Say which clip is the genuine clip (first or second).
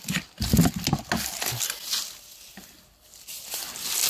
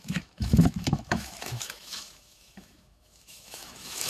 first